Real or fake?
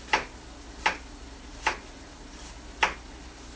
real